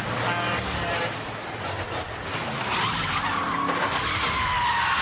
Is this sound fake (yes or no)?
no